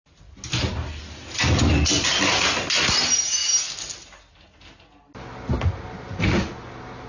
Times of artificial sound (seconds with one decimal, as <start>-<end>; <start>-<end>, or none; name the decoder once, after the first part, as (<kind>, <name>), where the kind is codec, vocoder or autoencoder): none